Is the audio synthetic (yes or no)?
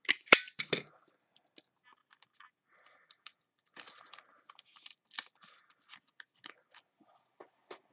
no